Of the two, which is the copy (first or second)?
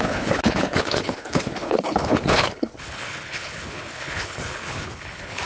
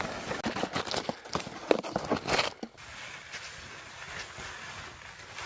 first